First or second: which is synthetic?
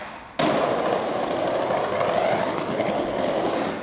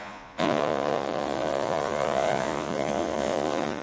second